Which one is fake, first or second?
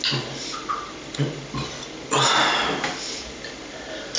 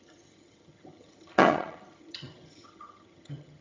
second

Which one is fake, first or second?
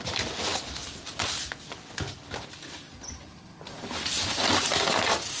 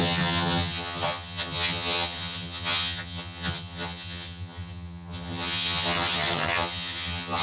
second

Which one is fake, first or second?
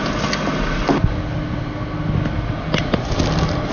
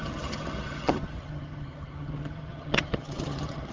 second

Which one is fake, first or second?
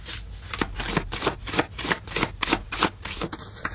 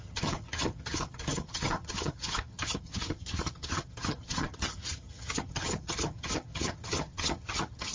second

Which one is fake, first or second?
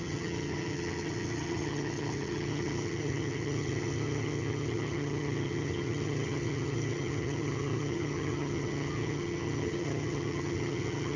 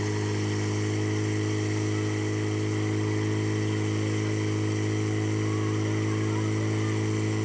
first